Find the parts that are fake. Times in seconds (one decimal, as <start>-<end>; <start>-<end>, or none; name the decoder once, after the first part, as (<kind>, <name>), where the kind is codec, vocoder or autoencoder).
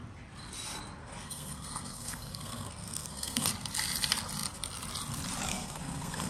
1.0-3.5 (codec, SNAC); 5.5-6.3